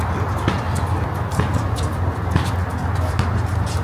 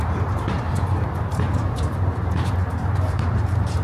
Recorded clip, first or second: first